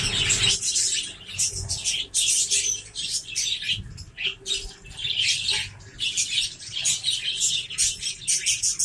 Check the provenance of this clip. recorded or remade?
recorded